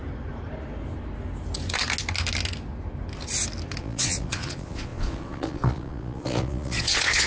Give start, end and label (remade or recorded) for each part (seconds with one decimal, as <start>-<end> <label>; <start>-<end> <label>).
0.0-3.8 recorded; 3.8-7.3 remade